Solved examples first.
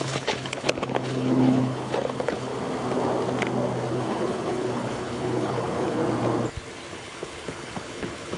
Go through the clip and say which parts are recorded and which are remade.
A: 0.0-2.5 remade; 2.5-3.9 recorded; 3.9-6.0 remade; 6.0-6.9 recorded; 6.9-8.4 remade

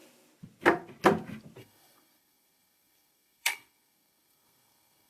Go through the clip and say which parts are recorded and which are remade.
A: 0.0-1.6 recorded; 1.6-5.1 remade

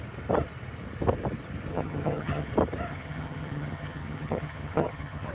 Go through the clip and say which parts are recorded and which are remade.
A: 0.0-1.7 recorded; 1.7-2.5 remade; 2.5-2.9 recorded; 2.9-5.3 remade

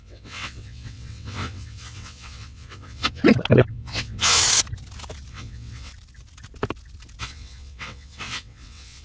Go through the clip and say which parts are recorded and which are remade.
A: 0.0-3.2 remade; 3.2-3.7 recorded; 3.7-4.4 remade; 4.4-5.3 recorded; 5.3-5.9 remade; 5.9-7.2 recorded; 7.2-9.0 remade

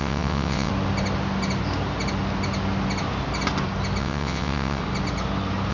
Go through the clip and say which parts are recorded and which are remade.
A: 0.0-0.7 remade; 0.7-4.0 recorded; 4.0-4.8 remade; 4.8-5.7 recorded